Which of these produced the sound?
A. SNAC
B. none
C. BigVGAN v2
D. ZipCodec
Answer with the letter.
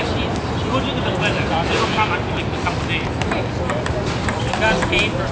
B